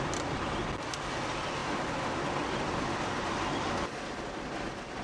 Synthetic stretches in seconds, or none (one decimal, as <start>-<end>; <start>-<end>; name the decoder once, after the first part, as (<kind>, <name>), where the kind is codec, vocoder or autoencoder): none